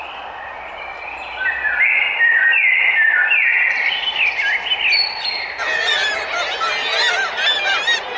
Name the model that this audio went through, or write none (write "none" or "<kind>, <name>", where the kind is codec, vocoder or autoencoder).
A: none